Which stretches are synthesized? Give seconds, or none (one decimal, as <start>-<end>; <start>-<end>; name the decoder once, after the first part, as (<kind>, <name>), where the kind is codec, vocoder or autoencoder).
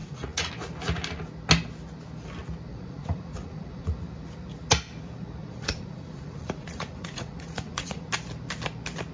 0.0-0.5 (vocoder, Vocos); 2.7-3.9; 5.4-8.1